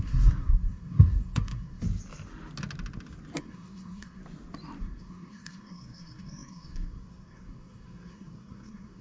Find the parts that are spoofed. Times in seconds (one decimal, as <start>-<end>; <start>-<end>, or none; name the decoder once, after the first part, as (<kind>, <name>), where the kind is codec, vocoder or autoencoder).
0.0-1.8 (codec, SNAC); 3.4-4.2; 4.8-9.0